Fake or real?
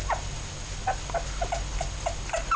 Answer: real